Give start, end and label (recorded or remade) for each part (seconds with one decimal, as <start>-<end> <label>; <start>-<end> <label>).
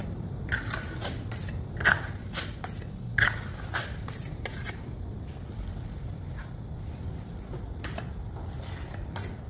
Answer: 0.0-9.5 recorded